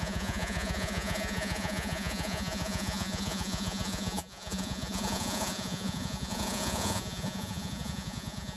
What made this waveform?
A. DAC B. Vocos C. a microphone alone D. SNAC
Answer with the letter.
B